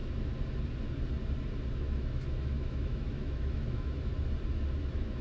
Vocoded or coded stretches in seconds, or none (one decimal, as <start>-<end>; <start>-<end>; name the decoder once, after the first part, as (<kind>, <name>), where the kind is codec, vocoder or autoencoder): 1.7-4.1 (autoencoder, DAC-VAE); 4.8-5.2